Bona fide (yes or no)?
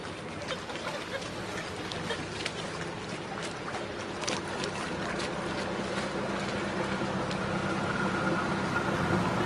yes